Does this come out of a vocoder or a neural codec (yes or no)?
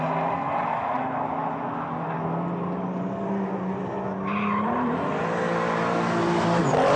no